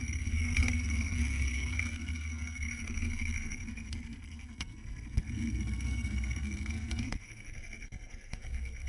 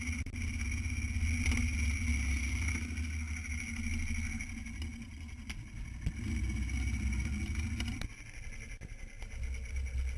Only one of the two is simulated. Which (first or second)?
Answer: first